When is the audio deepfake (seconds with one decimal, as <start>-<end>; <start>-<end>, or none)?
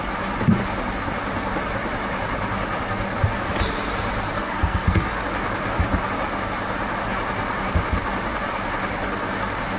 4.4-5.2